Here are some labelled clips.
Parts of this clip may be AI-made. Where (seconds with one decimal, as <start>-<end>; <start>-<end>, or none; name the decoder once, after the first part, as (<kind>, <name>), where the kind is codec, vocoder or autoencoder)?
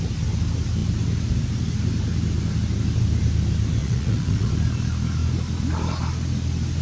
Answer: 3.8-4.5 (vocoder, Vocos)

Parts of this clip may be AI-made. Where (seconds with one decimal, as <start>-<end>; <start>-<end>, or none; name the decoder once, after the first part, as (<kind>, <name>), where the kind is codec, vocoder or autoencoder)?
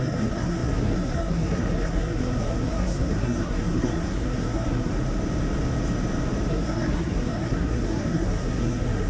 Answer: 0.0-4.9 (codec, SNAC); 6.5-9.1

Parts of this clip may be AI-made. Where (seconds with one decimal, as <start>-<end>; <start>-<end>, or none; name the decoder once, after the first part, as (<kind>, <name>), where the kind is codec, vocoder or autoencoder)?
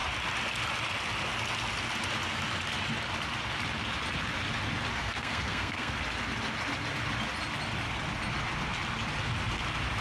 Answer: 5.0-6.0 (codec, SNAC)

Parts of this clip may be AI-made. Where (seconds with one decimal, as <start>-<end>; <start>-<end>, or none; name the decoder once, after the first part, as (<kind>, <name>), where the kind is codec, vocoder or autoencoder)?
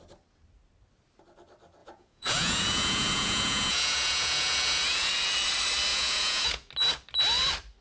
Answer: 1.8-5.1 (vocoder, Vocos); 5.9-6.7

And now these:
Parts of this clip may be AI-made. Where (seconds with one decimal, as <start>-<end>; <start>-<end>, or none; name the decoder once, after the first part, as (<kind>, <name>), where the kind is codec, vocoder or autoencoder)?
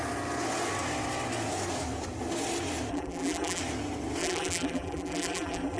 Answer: 2.9-3.6 (vocoder, BigVGAN v2); 4.2-5.8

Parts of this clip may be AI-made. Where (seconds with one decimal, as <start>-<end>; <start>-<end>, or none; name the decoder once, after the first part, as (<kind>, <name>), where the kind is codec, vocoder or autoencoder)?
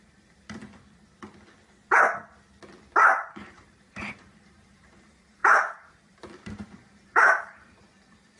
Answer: 0.0-0.6 (vocoder, BigVGAN v2); 3.1-8.4